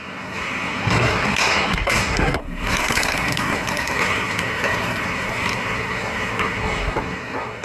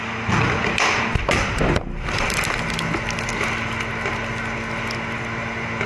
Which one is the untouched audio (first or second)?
second